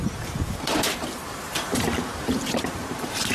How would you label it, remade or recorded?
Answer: remade